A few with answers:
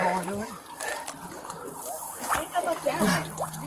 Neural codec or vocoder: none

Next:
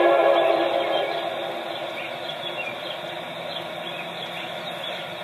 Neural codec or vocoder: none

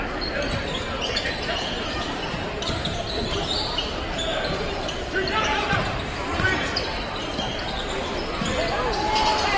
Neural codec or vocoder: vocoder, BigVGAN v2